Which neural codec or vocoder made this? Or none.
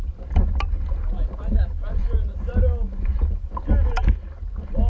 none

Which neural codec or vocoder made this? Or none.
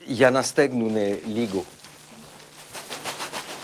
none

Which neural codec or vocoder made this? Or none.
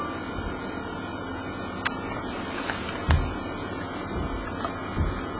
none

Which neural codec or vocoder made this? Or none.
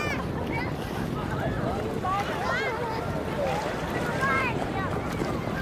none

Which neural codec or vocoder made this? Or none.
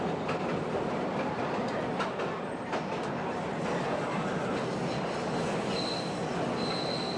none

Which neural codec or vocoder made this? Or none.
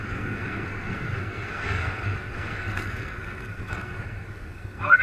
codec, SNAC